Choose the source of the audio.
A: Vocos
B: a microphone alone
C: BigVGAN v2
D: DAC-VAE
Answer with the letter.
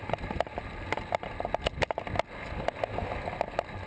B